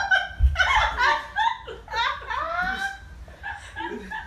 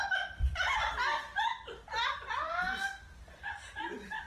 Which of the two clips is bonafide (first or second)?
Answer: first